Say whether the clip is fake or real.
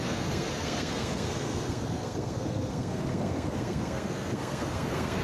fake